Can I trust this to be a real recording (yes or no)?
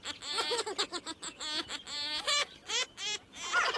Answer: yes